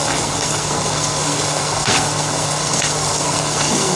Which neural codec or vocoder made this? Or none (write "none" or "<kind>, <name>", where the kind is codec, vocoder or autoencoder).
codec, SNAC